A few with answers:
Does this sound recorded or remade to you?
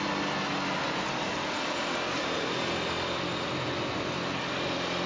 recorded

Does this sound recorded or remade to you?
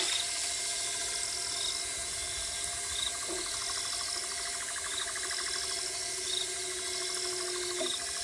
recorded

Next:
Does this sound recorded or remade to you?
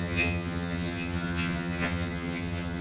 remade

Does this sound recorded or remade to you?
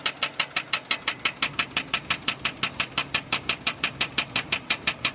recorded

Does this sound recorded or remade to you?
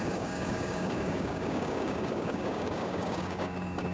remade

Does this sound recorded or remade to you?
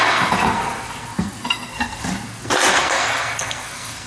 remade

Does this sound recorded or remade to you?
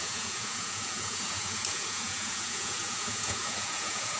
remade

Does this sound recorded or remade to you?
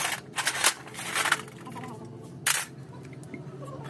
recorded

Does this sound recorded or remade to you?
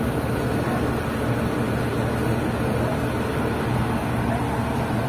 recorded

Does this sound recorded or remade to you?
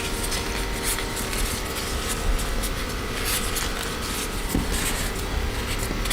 recorded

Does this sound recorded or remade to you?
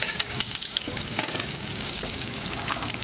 remade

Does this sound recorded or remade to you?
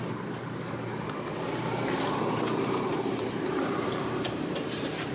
remade